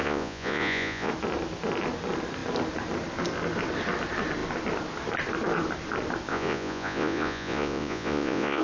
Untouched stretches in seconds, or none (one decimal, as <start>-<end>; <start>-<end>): 1.1-6.3